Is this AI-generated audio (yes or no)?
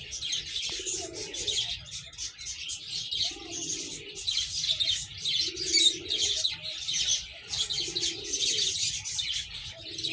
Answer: no